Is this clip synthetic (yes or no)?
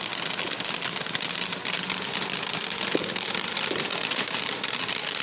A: no